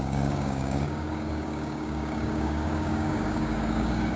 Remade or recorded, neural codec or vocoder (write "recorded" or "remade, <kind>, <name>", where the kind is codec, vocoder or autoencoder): remade, codec, DAC